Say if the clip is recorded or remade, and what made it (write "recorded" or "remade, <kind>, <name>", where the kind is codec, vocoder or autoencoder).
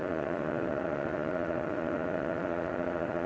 remade, vocoder, Vocos